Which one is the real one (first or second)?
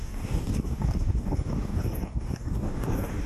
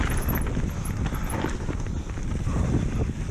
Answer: second